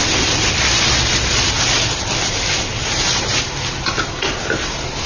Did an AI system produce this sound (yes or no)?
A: no